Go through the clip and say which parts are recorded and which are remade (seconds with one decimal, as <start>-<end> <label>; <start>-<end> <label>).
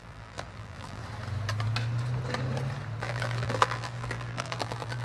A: 0.0-1.0 remade; 1.0-3.0 recorded; 3.0-5.0 remade